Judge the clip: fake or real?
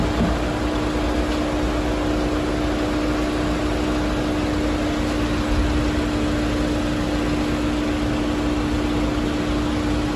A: real